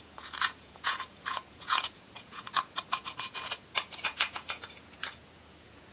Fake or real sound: fake